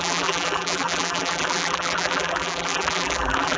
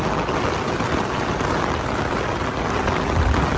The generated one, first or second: first